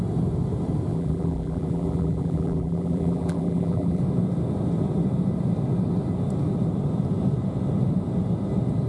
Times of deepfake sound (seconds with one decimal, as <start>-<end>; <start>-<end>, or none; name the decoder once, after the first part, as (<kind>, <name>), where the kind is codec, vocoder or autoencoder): 0.9-4.0 (vocoder, BigVGAN v2)